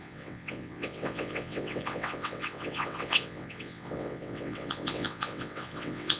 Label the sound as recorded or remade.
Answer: remade